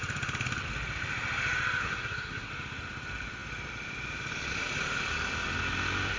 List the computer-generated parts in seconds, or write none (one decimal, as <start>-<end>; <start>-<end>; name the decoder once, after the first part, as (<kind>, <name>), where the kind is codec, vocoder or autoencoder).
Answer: 1.8-2.5 (codec, SNAC)